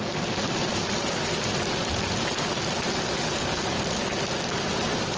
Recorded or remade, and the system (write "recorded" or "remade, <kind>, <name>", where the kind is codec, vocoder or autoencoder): recorded